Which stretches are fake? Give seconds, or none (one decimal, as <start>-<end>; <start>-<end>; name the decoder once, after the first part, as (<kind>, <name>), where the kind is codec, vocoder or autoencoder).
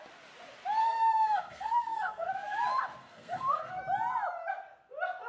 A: 0.8-2.3 (codec, SNAC); 3.0-3.7